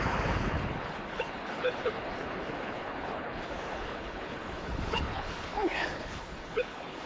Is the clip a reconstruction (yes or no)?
yes